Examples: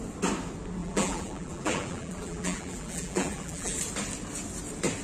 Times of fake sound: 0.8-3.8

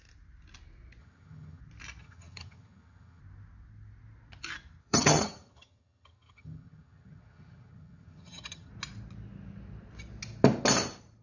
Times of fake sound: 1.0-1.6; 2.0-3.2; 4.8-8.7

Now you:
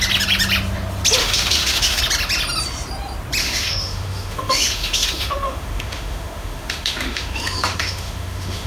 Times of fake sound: 1.2-2.0; 3.4-8.7